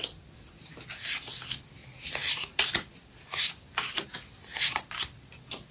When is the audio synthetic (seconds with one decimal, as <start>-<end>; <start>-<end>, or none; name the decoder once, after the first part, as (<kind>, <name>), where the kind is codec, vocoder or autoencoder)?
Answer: 1.8-5.2 (vocoder, BigVGAN v2)